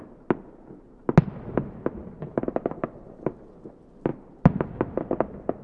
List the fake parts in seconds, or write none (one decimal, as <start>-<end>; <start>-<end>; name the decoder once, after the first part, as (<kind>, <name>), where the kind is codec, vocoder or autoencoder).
2.0-3.4 (vocoder, BigVGAN v2)